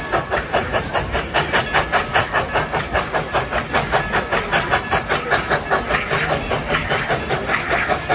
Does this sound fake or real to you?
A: real